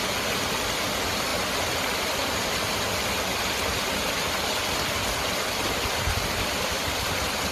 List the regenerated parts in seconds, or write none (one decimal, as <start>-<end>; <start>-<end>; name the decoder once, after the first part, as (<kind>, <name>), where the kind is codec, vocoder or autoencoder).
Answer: none